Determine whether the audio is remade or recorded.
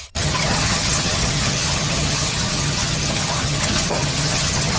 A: remade